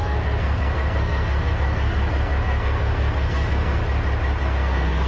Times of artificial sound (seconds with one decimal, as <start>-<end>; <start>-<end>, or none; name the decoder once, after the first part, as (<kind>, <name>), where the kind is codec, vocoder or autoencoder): 0.0-3.8 (codec, SNAC); 4.4-5.1